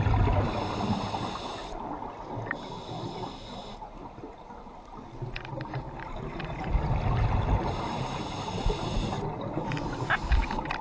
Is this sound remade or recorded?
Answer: recorded